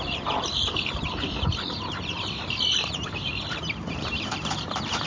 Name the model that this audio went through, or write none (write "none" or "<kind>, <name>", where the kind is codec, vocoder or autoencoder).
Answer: vocoder, BigVGAN v2